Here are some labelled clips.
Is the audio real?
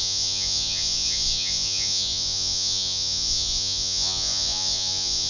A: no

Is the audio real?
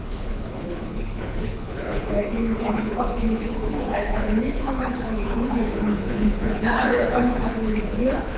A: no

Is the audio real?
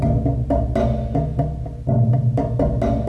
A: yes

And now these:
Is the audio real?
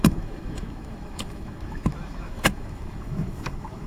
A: no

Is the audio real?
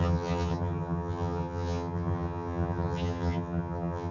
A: no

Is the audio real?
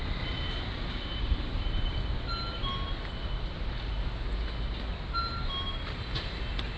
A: yes